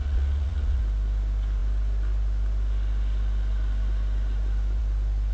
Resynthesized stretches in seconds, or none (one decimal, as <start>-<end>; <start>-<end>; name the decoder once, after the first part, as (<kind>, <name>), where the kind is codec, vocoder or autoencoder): 0.0-0.8 (vocoder, Vocos)